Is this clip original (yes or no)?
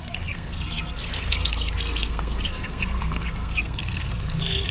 no